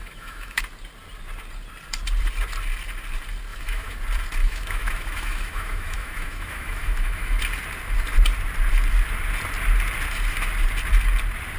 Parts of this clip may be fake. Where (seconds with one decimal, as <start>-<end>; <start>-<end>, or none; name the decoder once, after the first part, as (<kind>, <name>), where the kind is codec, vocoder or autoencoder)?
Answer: 0.0-0.6 (autoencoder, DAC-VAE); 3.5-4.0; 4.4-7.4